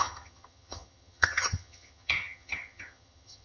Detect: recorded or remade remade